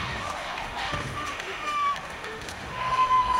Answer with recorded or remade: remade